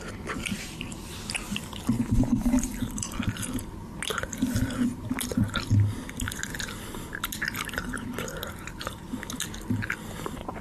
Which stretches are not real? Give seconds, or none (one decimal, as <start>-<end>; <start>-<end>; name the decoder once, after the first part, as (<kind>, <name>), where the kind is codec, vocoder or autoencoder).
none